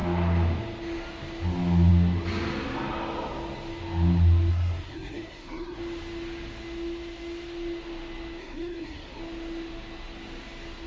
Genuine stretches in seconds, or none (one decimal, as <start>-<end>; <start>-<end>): 0.0-4.5; 5.8-8.4; 9.2-10.9